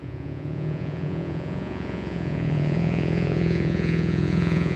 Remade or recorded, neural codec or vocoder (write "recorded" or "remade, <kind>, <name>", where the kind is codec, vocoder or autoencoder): remade, vocoder, Vocos